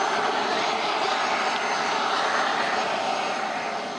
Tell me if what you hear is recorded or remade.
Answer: recorded